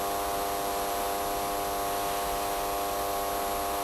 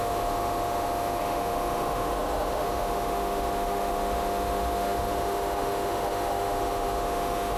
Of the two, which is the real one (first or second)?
first